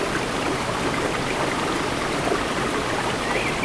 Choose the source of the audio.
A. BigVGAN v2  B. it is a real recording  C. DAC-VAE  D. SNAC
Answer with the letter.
B